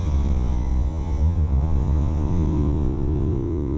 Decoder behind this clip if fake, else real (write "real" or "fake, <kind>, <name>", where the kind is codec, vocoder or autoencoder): fake, vocoder, Vocos